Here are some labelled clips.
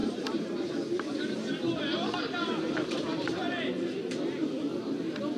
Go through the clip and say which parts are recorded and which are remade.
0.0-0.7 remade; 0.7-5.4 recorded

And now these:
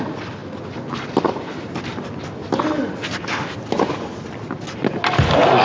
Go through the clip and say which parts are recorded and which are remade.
0.0-5.6 recorded

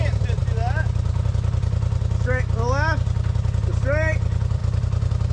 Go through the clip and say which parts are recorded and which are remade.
0.0-5.3 recorded

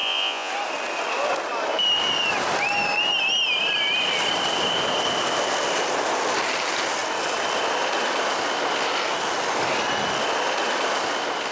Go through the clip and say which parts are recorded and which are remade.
0.0-0.5 remade; 0.5-11.5 recorded

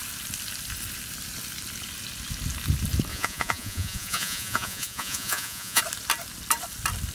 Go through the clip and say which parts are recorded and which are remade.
0.0-3.1 recorded; 3.1-5.8 remade; 5.8-7.1 recorded

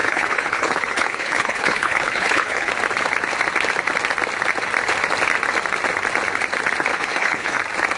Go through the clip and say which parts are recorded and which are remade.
0.0-2.7 remade; 2.7-6.9 recorded; 6.9-7.6 remade; 7.6-8.0 recorded